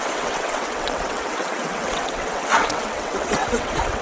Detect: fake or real fake